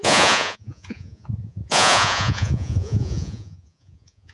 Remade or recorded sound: remade